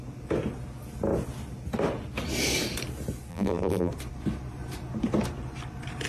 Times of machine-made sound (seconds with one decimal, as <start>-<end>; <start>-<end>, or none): 3.3-3.9